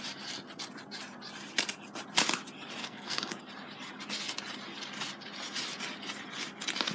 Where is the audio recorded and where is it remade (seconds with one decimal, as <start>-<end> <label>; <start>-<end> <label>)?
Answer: 0.0-2.8 recorded; 2.8-3.4 remade; 3.4-6.9 recorded